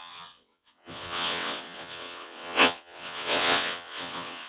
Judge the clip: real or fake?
fake